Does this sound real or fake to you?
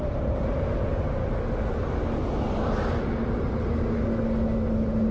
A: real